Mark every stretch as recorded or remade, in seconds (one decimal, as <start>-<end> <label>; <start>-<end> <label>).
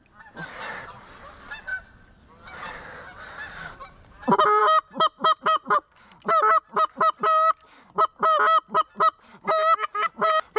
0.0-10.6 recorded